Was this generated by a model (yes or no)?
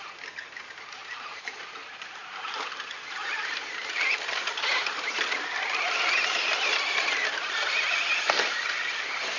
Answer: yes